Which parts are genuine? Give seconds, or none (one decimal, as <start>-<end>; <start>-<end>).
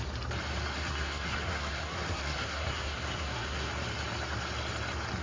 0.0-0.7; 3.7-5.2